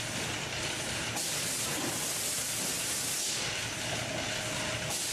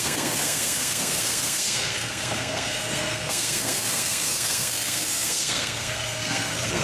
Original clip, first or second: first